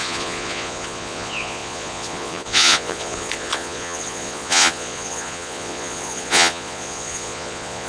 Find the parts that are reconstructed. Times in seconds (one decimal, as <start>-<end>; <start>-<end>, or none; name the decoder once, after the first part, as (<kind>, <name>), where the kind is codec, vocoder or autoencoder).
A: 0.0-7.9 (vocoder, Vocos)